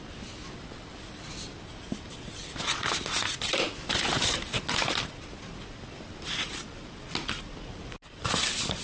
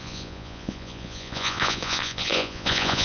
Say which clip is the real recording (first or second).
first